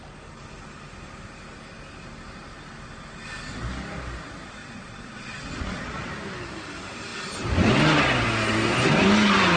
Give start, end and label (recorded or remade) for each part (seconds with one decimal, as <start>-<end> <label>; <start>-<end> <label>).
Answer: 0.0-4.6 recorded; 4.6-6.1 remade; 6.1-9.6 recorded